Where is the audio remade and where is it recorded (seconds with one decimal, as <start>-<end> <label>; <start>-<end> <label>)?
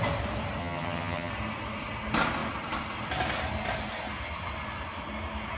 0.0-0.6 recorded; 0.6-1.3 remade; 1.3-5.6 recorded